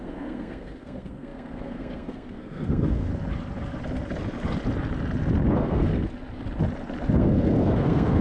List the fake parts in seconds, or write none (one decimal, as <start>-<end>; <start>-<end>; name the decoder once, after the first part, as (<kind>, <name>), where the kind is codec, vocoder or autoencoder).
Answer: 0.0-3.1 (codec, SNAC); 5.5-5.9; 7.1-8.2